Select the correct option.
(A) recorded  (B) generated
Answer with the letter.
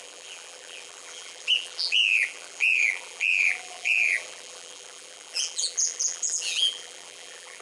B